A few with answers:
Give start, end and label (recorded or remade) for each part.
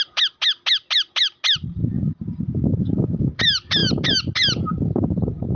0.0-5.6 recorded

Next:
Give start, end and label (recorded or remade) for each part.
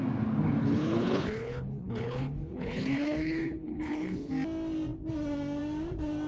0.0-0.6 recorded; 0.6-4.3 remade; 4.3-6.3 recorded